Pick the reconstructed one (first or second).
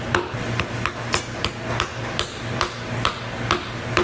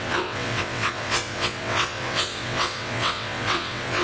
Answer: second